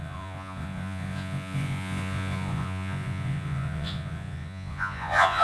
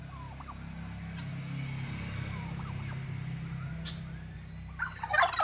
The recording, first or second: second